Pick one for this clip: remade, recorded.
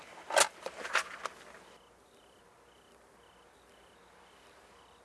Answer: recorded